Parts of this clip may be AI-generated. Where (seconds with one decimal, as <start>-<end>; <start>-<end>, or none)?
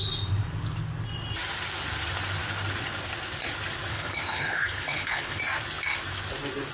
3.9-5.4